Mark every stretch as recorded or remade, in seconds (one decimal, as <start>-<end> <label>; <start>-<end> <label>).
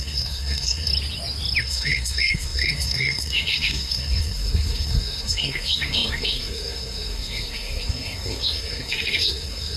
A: 0.0-0.9 remade; 0.9-1.6 recorded; 1.6-9.8 remade